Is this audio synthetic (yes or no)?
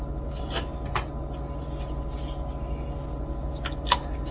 no